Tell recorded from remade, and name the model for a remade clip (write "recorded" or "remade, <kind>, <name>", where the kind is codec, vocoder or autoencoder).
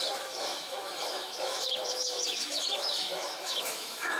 remade, autoencoder, DAC-VAE